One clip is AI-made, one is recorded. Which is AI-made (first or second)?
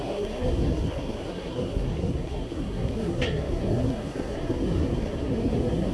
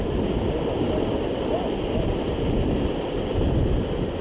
first